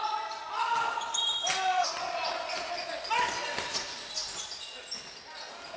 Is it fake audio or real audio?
real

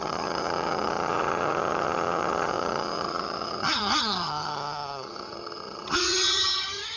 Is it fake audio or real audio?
fake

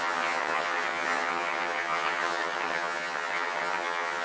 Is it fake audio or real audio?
fake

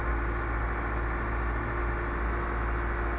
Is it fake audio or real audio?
real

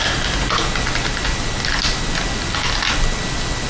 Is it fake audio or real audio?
real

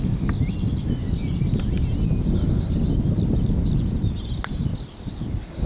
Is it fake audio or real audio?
real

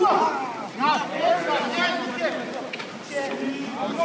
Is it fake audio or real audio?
real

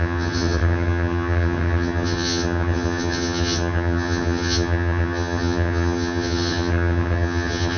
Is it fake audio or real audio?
fake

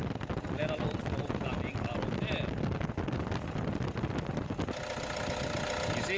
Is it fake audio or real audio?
real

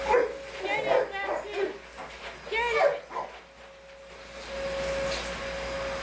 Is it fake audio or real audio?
real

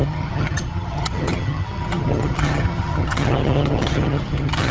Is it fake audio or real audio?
fake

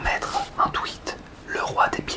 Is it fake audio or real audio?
real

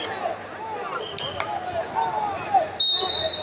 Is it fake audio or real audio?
real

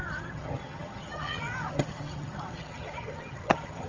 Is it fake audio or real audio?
fake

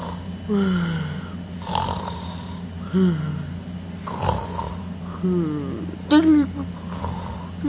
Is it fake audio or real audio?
real